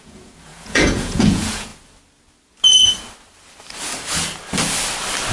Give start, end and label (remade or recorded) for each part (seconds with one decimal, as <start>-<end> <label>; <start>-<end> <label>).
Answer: 0.0-1.7 remade; 1.7-5.3 recorded